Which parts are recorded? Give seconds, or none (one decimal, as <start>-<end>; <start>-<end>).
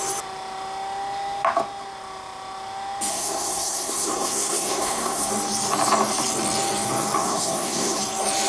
0.0-3.1; 5.3-7.2; 8.0-8.5